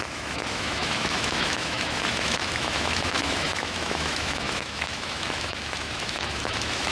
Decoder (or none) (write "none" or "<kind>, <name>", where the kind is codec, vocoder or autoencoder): autoencoder, DAC-VAE